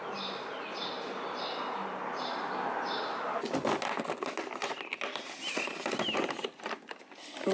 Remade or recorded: recorded